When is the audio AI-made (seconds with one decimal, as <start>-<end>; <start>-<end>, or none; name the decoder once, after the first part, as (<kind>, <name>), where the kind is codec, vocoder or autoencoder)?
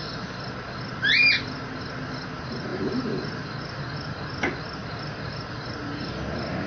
4.8-6.1 (vocoder, BigVGAN v2)